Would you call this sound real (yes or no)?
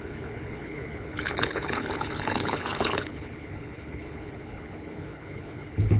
no